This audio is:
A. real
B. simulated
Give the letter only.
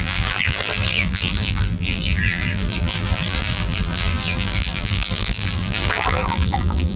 B